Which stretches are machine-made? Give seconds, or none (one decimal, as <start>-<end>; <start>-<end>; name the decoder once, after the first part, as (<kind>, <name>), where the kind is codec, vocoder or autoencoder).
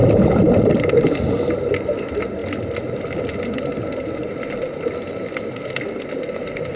0.6-2.4 (vocoder, BigVGAN v2)